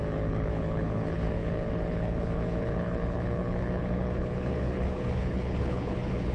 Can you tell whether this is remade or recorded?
remade